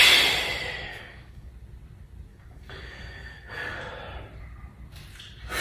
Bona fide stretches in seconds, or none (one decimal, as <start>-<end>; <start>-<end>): 0.0-0.9; 1.5-2.3; 3.8-5.6